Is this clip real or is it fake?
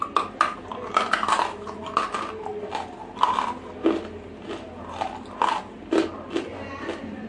real